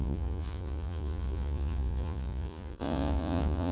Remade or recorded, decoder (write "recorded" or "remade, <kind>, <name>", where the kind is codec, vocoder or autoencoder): remade, vocoder, Vocos